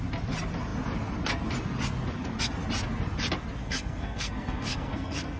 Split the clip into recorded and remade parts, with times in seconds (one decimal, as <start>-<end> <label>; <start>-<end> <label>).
0.0-3.6 recorded; 3.6-5.4 remade

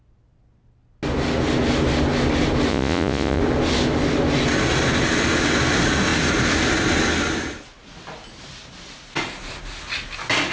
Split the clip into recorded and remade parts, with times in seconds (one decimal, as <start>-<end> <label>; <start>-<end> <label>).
0.0-2.7 recorded; 2.7-3.4 remade; 3.4-10.5 recorded

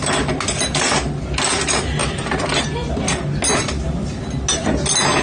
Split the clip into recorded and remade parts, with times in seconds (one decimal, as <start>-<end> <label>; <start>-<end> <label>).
0.0-2.0 recorded; 2.0-3.0 remade; 3.0-5.2 recorded

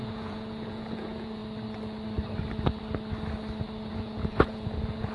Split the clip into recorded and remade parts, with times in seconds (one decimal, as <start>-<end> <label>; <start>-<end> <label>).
0.0-1.4 remade; 1.4-3.9 recorded; 3.9-5.1 remade

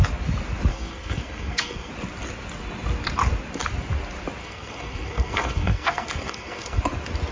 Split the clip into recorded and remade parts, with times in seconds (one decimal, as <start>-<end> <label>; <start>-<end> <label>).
0.0-0.7 recorded; 0.7-1.9 remade; 1.9-4.4 recorded; 4.4-6.8 remade; 6.8-7.3 recorded

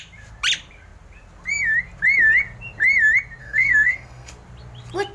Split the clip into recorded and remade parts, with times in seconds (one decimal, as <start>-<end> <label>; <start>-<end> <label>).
0.0-3.4 recorded; 3.4-4.3 remade; 4.3-5.1 recorded

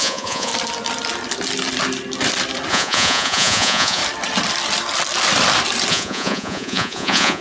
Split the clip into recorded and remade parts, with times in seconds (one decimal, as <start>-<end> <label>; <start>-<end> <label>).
0.0-0.5 remade; 0.5-2.7 recorded; 2.7-4.0 remade; 4.0-5.9 recorded; 5.9-7.4 remade